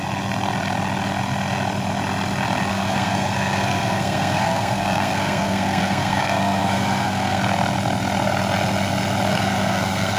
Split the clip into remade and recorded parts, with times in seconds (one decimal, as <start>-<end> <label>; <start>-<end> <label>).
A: 0.0-2.7 recorded; 2.7-7.4 remade; 7.4-9.3 recorded; 9.3-10.2 remade